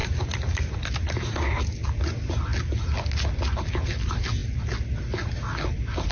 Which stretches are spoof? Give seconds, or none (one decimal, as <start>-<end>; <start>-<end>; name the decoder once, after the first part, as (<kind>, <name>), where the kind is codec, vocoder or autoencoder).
none